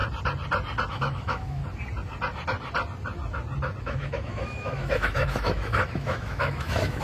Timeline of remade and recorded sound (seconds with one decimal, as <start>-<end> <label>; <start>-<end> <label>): 0.0-0.9 recorded; 0.9-1.6 remade; 1.6-3.8 recorded; 3.8-7.0 remade